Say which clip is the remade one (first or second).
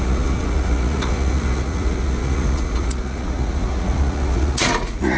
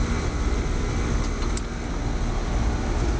first